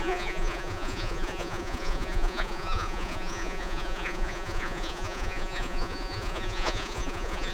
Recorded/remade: remade